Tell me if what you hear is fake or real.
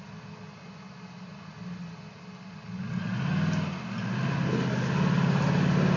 real